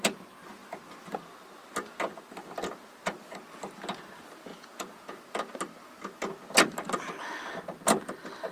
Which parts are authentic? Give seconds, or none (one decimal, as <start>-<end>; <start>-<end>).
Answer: 0.0-4.5; 5.2-8.5